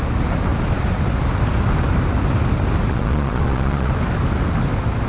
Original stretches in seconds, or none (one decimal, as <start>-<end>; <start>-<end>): 0.0-2.9; 3.9-5.1